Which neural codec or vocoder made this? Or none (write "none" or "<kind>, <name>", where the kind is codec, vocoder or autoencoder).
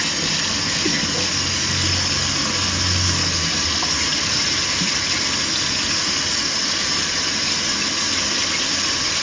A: none